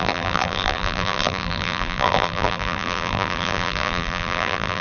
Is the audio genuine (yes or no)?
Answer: no